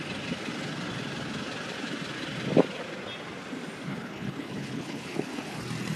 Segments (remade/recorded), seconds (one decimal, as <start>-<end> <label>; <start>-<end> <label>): 0.0-3.9 recorded; 3.9-5.6 remade; 5.6-6.0 recorded